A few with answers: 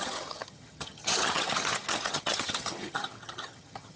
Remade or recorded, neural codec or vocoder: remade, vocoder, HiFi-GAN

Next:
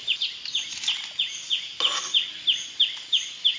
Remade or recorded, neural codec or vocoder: recorded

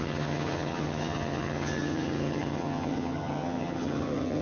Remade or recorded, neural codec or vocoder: remade, vocoder, HiFi-GAN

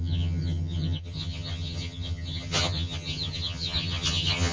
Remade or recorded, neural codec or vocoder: remade, vocoder, HiFi-GAN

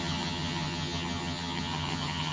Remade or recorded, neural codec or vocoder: remade, vocoder, HiFi-GAN